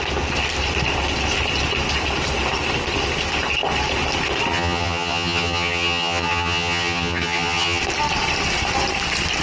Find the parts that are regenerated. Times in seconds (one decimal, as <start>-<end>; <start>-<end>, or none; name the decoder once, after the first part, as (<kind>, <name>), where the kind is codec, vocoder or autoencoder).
4.5-7.8 (vocoder, HiFi-GAN)